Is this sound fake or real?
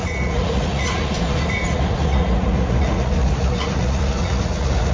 fake